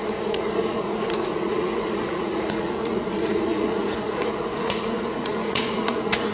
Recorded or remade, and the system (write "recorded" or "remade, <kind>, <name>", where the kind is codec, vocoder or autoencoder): remade, vocoder, Vocos